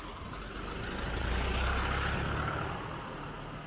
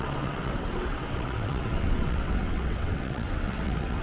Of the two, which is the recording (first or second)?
first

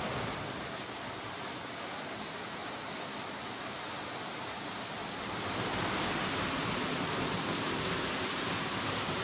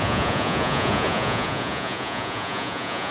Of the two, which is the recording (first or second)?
first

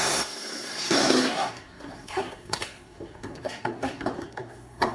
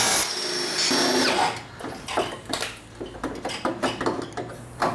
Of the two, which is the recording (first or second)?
second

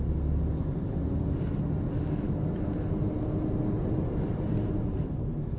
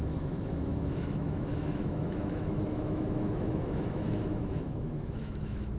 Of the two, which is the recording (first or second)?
first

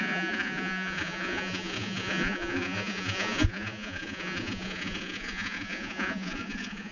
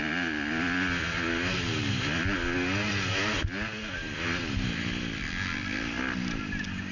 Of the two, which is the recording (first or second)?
second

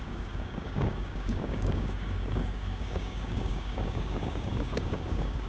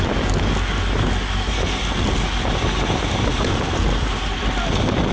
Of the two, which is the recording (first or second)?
second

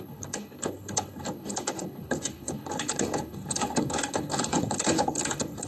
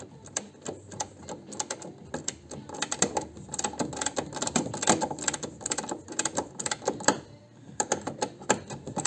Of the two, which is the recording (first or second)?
second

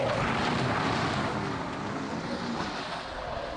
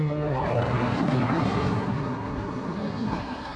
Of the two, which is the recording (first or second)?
first